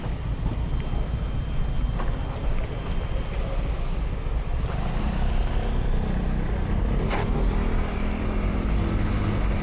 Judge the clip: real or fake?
real